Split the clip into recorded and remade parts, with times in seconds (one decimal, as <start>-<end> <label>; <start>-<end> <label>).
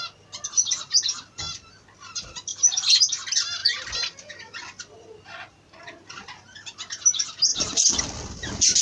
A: 0.0-2.5 recorded; 2.5-3.1 remade; 3.1-7.5 recorded; 7.5-8.0 remade; 8.0-8.8 recorded